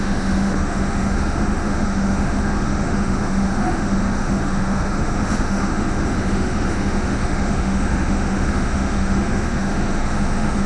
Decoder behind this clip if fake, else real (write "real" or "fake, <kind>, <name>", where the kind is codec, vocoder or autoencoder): fake, autoencoder, DAC-VAE